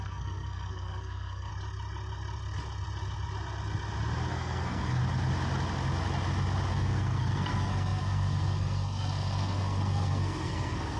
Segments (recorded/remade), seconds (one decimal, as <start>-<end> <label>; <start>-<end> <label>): 0.0-1.5 remade; 1.5-4.3 recorded; 4.3-5.0 remade; 5.0-6.7 recorded; 6.7-11.0 remade